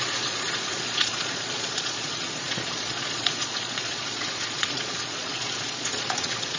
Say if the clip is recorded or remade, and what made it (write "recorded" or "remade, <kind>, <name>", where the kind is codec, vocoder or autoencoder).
remade, vocoder, Vocos